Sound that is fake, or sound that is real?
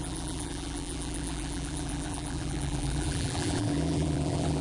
fake